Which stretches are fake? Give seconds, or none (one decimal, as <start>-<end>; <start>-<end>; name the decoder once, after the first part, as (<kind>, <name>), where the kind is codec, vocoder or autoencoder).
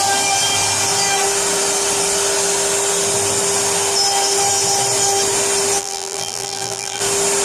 5.8-7.0 (vocoder, BigVGAN v2)